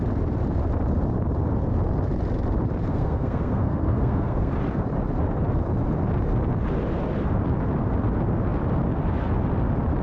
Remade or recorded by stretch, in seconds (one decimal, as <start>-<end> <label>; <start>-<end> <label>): 0.0-2.9 recorded; 2.9-4.5 remade; 4.5-10.0 recorded